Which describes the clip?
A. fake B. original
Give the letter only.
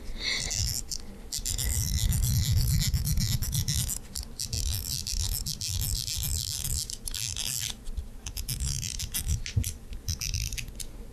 B